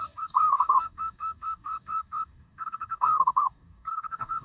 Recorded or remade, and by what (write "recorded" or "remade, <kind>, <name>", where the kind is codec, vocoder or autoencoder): remade, codec, DAC